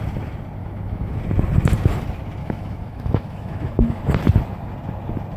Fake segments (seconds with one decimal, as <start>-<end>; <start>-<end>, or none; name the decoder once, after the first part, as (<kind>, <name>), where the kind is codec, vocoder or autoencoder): 0.6-1.2 (autoencoder, DAC-VAE); 2.4-4.0